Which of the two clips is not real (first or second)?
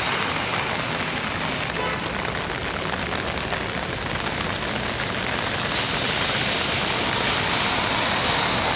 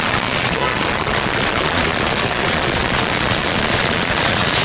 second